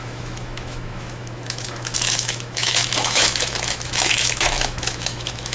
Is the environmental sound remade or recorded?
remade